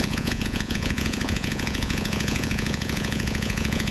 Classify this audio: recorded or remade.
remade